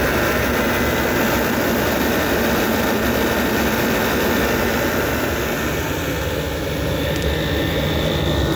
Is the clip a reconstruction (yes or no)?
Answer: no